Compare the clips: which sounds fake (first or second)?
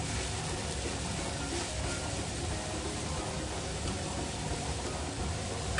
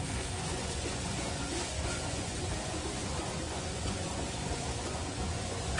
second